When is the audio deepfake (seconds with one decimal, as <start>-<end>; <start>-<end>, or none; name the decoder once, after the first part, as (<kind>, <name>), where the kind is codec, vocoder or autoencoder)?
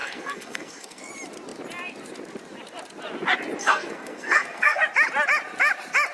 0.0-1.1 (codec, SNAC); 3.6-4.8